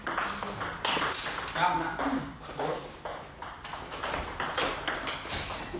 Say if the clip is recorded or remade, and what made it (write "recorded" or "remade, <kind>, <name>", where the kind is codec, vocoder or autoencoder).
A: recorded